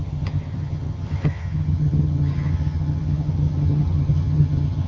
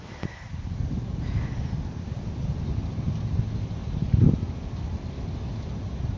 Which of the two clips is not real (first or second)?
first